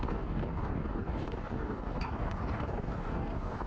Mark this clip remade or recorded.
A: remade